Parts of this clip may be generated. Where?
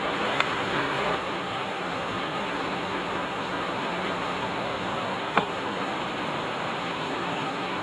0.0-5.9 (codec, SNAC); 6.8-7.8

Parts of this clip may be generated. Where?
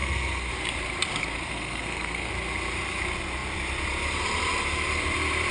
0.0-0.5 (codec, SNAC); 1.2-2.3